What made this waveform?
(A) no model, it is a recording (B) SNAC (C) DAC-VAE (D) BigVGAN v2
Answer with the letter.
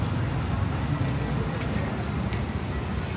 A